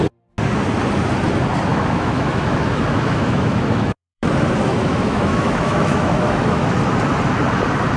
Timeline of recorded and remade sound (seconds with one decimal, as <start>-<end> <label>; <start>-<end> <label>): 0.0-1.7 recorded; 1.7-4.3 remade; 4.3-4.7 recorded; 4.7-6.7 remade; 6.7-8.0 recorded